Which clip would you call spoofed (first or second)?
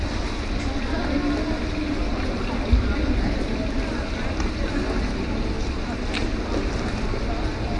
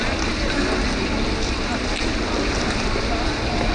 second